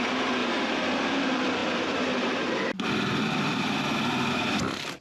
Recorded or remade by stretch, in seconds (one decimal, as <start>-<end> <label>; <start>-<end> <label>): 0.0-0.4 remade; 0.4-1.2 recorded; 1.2-5.0 remade